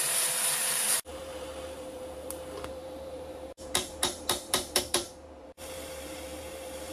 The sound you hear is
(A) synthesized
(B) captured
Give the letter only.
A